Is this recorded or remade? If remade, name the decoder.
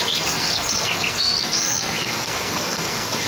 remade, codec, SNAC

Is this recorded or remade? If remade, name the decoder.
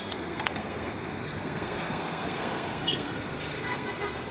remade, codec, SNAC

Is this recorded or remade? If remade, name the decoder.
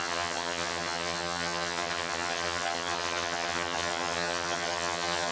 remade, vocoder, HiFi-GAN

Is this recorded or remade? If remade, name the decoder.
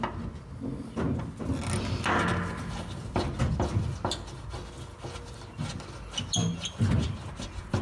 recorded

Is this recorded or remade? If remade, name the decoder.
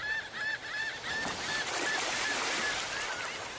recorded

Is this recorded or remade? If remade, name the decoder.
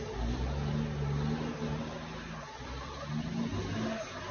recorded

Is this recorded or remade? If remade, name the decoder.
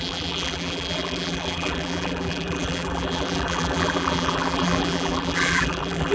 remade, vocoder, BigVGAN v2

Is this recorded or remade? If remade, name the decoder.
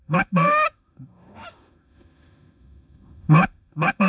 remade, autoencoder, DAC-VAE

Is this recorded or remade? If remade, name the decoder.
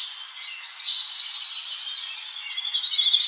remade, vocoder, BigVGAN v2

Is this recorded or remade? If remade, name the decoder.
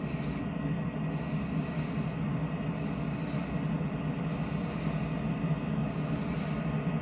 recorded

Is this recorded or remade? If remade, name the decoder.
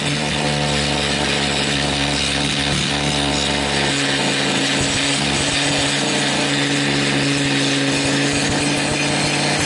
recorded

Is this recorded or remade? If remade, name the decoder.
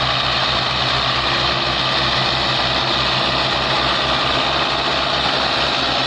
recorded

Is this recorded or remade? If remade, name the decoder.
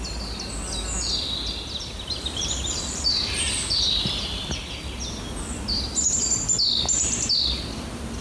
recorded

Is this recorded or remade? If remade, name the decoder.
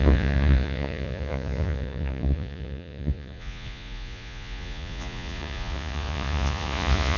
remade, vocoder, Vocos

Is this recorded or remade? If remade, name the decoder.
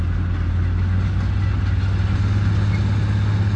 recorded